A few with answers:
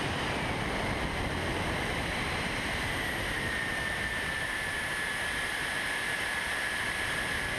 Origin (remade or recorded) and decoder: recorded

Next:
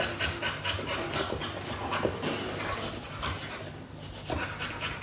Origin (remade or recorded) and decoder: recorded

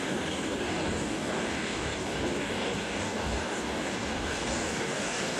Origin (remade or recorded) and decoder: remade, codec, DAC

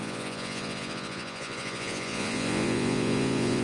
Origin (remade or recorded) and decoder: remade, vocoder, Vocos